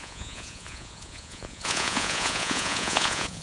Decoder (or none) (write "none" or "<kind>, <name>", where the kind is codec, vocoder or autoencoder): vocoder, Vocos